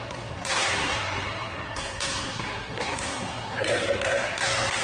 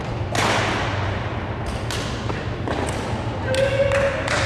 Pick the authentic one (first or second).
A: second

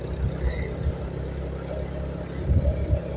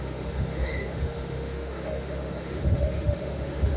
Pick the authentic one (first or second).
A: first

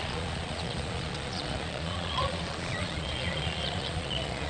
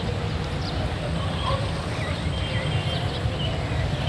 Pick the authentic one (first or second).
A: second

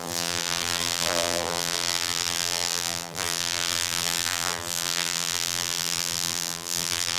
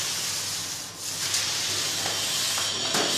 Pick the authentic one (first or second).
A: second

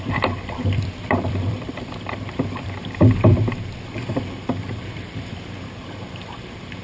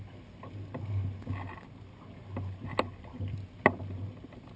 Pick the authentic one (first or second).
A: second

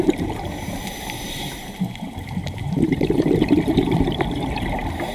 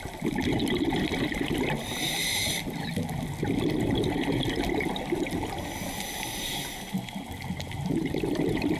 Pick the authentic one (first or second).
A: second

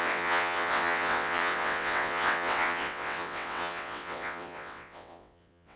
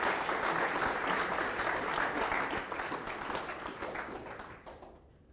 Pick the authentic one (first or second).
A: second